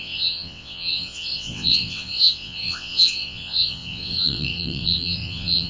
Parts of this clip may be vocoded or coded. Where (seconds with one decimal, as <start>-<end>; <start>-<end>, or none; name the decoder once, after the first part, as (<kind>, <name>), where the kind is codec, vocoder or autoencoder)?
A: 0.0-5.7 (vocoder, WaveNeXt)